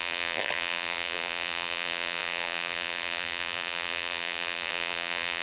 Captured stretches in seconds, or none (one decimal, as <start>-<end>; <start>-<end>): none